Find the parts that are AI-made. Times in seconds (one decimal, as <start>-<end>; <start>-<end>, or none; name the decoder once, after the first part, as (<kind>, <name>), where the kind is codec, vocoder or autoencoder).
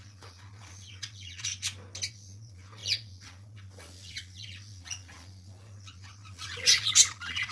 0.0-1.5 (vocoder, Vocos); 2.1-7.5